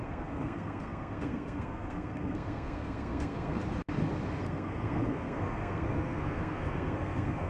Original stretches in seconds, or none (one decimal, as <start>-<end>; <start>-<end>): 3.6-4.4